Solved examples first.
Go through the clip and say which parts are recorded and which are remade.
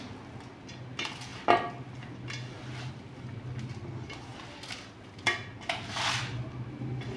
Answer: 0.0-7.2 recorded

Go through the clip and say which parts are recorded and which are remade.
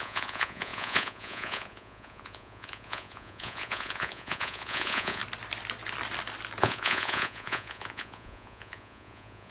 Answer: 0.0-5.2 remade; 5.2-6.6 recorded; 6.6-9.5 remade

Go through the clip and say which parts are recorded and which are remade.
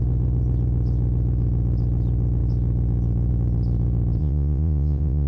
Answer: 0.0-4.2 recorded; 4.2-5.3 remade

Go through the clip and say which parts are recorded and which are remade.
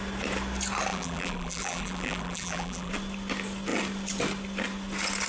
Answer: 0.0-0.9 recorded; 0.9-2.9 remade; 2.9-5.3 recorded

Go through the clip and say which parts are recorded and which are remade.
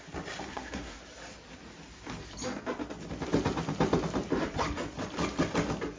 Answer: 0.0-0.5 recorded; 0.5-1.0 remade; 1.0-6.0 recorded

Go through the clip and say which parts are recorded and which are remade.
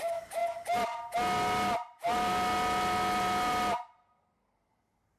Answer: 0.0-5.2 recorded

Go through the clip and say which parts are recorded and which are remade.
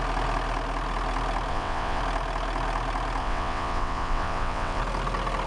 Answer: 0.0-1.5 recorded; 1.5-2.0 remade; 2.0-3.2 recorded; 3.2-4.8 remade; 4.8-5.5 recorded